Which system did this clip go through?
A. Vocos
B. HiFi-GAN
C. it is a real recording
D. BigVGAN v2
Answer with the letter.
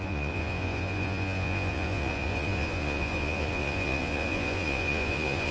A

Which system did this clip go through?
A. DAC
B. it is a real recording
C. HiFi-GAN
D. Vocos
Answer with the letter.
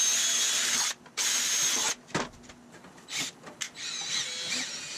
B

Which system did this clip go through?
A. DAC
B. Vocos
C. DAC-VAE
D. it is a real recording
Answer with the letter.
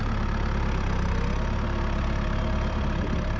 D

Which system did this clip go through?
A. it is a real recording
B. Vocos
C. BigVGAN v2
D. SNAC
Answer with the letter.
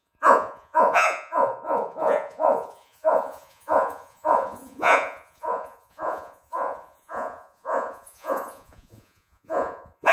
B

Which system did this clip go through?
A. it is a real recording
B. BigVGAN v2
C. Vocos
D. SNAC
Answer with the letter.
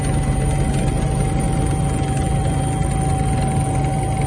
A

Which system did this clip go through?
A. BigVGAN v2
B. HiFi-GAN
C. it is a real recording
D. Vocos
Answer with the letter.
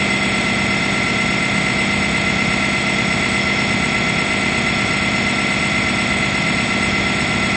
C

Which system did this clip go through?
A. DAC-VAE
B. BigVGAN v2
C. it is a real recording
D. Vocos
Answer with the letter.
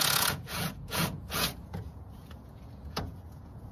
D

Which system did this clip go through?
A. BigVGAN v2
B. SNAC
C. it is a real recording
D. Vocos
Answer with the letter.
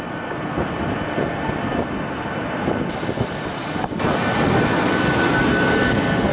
C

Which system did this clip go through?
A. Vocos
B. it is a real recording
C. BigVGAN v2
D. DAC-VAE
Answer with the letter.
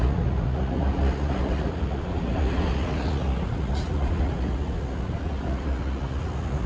A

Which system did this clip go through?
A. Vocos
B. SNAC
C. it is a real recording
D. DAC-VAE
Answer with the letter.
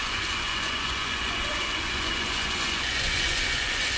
A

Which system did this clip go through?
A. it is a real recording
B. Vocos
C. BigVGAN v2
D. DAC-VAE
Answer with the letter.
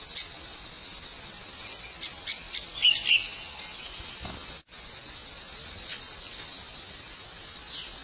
A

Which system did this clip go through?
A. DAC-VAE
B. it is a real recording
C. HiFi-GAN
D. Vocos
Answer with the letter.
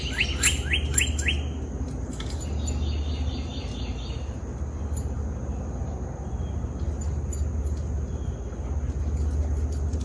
B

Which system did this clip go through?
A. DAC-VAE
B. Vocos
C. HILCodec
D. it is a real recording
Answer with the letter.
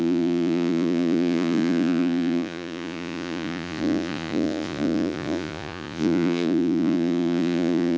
B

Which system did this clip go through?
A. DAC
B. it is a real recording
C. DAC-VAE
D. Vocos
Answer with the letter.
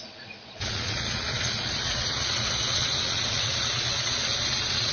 D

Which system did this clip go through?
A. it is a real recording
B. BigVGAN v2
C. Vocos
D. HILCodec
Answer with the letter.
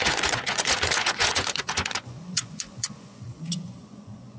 C